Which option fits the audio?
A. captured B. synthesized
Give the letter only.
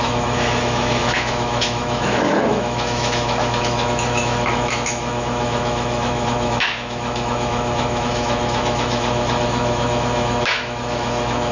B